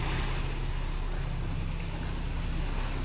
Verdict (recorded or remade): recorded